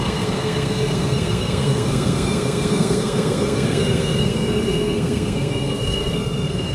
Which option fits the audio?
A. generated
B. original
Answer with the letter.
A